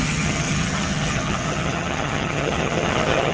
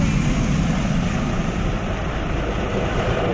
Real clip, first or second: second